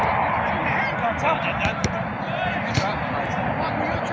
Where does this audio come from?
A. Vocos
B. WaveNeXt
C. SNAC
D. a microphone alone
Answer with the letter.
D